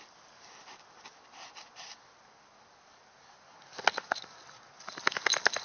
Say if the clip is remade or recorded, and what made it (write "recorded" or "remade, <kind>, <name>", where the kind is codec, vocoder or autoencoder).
recorded